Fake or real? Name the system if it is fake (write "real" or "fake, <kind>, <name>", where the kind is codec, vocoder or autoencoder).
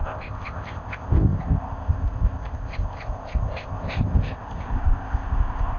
fake, codec, ZipCodec